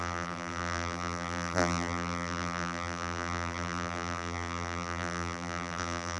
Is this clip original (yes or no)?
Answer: no